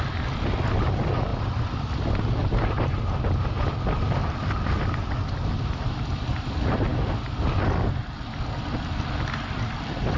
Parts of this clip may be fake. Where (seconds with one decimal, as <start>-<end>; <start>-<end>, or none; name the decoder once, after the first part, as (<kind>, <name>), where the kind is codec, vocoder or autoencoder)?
4.2-5.9 (vocoder, BigVGAN v2)